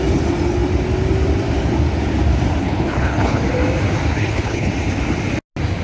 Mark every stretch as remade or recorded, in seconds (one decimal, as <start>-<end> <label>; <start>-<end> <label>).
0.0-2.6 recorded; 2.6-3.4 remade; 3.4-4.1 recorded; 4.1-4.7 remade; 4.7-5.8 recorded